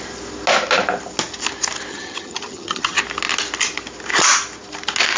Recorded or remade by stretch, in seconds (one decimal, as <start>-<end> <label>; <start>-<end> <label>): 0.0-1.9 recorded; 1.9-3.0 remade; 3.0-5.2 recorded